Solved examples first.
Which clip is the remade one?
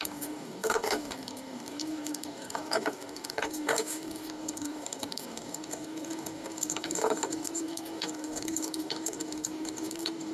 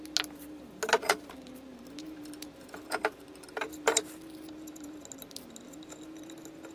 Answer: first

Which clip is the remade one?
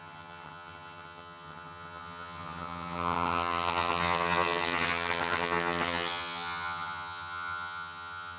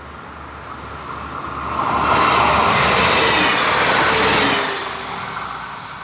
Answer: first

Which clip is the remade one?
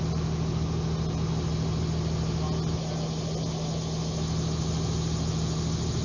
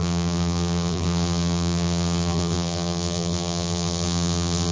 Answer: second